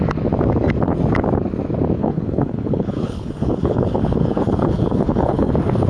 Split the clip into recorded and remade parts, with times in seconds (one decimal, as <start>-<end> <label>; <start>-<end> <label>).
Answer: 0.0-2.0 recorded; 2.0-5.5 remade; 5.5-5.9 recorded